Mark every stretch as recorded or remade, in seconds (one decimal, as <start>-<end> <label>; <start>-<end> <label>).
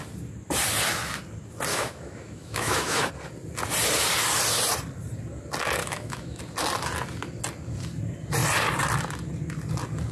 0.0-1.7 recorded; 1.7-3.1 remade; 3.1-5.8 recorded; 5.8-6.4 remade; 6.4-10.1 recorded